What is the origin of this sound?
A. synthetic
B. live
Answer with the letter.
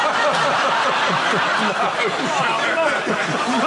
B